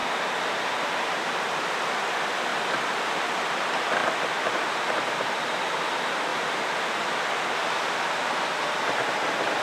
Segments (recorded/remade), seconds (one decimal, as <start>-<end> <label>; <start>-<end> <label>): 0.0-0.7 recorded; 0.7-2.5 remade; 2.5-3.1 recorded; 3.1-4.0 remade; 4.0-5.7 recorded; 5.7-6.3 remade; 6.3-7.0 recorded; 7.0-9.6 remade